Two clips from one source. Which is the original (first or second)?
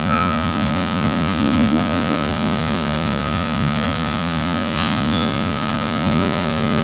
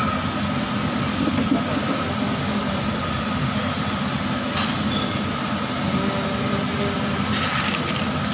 second